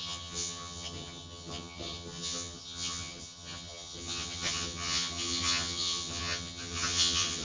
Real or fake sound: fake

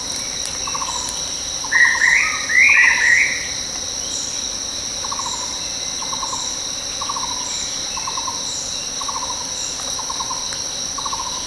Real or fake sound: real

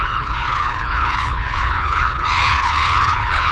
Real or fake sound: fake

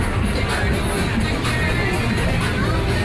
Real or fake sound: real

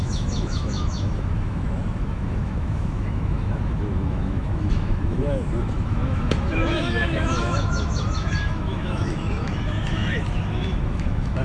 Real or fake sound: fake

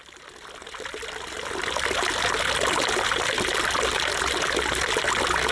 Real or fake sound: real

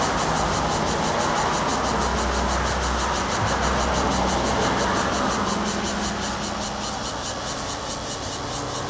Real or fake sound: real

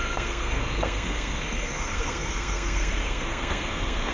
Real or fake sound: fake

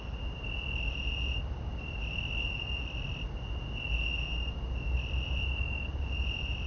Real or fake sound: real